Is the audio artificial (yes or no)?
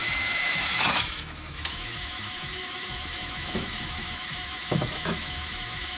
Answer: yes